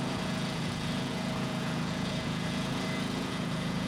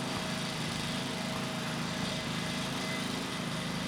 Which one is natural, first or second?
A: second